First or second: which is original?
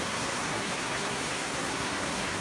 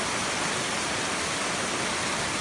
second